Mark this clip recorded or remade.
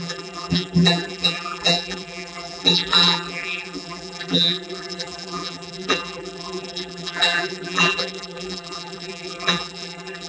remade